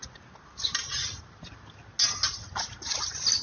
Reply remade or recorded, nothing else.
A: recorded